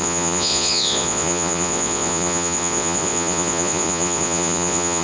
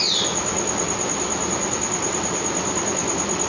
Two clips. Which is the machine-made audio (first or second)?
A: first